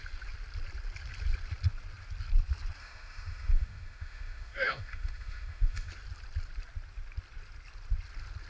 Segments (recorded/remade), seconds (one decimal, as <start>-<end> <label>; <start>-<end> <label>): 0.0-2.8 recorded; 2.8-5.9 remade; 5.9-8.5 recorded